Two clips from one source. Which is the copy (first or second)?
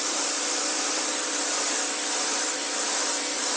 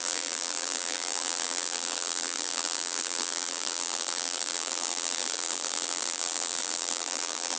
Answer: second